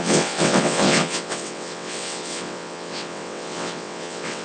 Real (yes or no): no